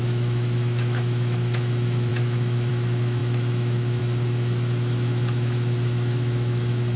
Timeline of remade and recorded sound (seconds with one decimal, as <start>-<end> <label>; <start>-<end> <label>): 0.0-7.0 remade